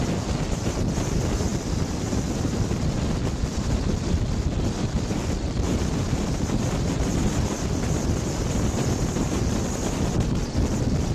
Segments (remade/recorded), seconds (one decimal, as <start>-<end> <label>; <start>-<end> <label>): 0.0-11.1 recorded